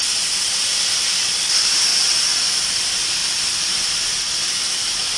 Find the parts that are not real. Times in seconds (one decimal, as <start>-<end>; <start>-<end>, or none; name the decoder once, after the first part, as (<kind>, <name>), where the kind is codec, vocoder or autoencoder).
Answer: 3.2-3.9 (vocoder, BigVGAN v2)